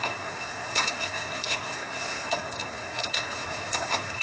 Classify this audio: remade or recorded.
remade